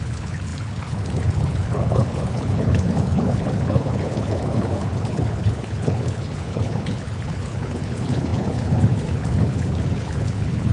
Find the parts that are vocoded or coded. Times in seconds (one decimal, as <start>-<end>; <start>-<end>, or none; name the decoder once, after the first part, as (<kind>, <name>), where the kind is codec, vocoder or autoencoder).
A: 0.0-10.7 (codec, HILCodec)